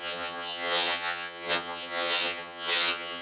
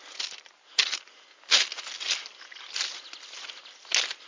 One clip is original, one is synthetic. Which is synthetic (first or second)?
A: first